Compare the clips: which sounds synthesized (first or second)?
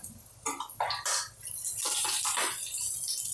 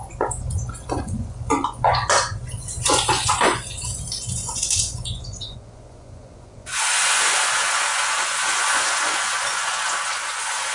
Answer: second